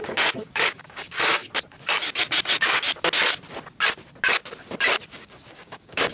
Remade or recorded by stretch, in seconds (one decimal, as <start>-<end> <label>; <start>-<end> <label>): 0.0-1.4 remade; 1.4-5.1 recorded; 5.1-6.1 remade